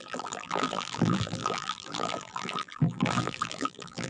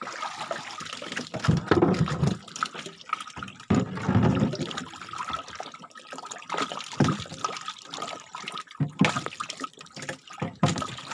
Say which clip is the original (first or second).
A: second